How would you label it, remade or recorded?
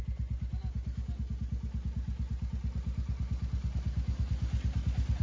recorded